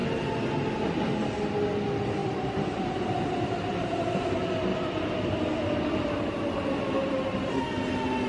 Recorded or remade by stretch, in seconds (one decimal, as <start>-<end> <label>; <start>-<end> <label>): 0.0-2.2 recorded; 2.2-4.0 remade; 4.0-4.7 recorded; 4.7-7.6 remade; 7.6-8.3 recorded